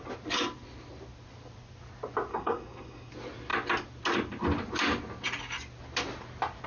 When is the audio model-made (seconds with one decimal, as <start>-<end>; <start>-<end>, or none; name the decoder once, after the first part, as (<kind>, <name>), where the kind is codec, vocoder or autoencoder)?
2.3-3.1 (codec, SNAC)